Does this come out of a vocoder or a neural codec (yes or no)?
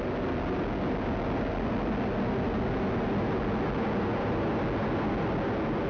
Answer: no